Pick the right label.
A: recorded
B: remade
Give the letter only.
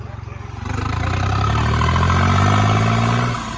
A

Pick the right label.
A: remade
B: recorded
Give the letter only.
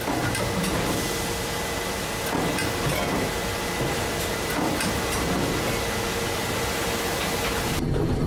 B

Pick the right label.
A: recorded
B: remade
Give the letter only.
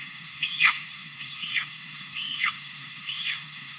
B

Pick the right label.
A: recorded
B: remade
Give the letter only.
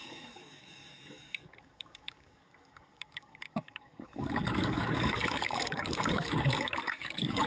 B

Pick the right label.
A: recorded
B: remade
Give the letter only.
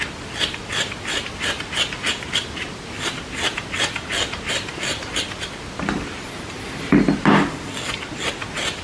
A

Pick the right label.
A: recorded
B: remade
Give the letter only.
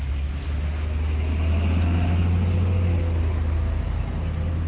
A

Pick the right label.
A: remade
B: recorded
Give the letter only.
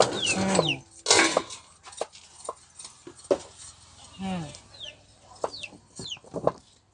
B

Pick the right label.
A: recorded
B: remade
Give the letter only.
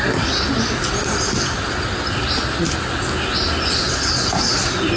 A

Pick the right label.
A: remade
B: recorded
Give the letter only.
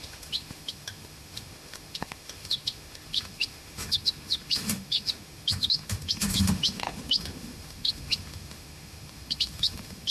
A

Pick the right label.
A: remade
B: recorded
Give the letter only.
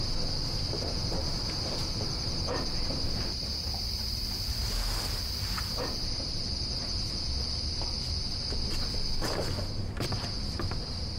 B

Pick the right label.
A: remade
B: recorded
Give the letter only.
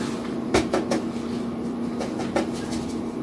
B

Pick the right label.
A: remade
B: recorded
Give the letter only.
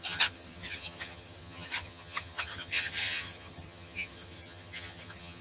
A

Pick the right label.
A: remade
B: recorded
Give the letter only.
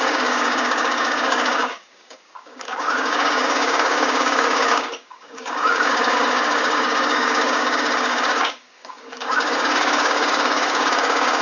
A